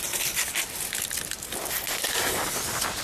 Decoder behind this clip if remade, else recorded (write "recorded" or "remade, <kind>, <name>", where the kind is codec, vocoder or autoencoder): recorded